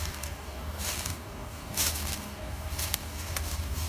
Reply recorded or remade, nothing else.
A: remade